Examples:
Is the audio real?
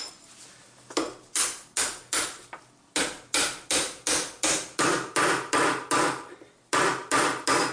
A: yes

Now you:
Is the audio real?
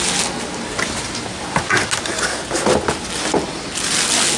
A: yes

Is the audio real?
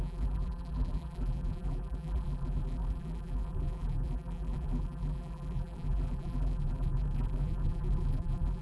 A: no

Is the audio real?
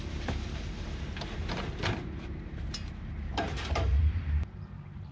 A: no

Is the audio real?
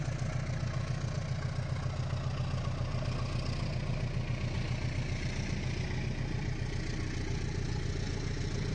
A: yes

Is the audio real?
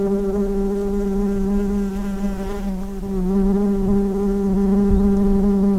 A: yes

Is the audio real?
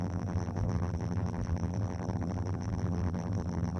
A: no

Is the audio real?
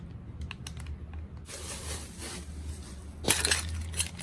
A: yes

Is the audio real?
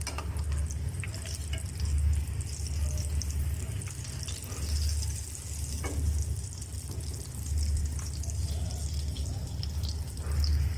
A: yes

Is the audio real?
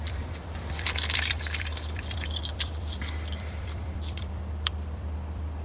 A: no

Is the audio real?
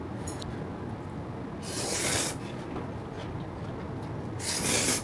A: yes